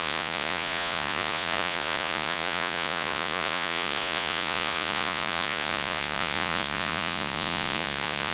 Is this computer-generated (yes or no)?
yes